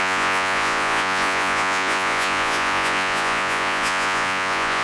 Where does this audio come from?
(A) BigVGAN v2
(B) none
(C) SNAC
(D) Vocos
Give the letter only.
D